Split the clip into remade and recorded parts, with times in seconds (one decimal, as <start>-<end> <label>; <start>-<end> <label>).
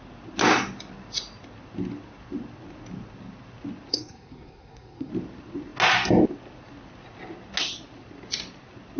0.0-3.9 recorded; 3.9-5.1 remade; 5.1-9.0 recorded